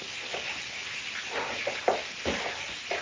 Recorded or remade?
recorded